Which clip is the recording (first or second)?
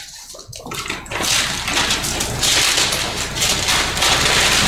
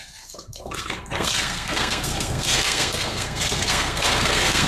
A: first